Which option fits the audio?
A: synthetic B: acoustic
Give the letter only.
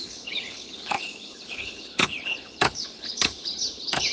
A